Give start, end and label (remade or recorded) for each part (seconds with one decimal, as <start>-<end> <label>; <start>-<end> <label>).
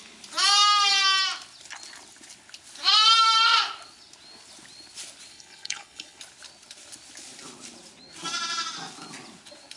0.0-5.3 recorded; 5.3-6.2 remade; 6.2-9.8 recorded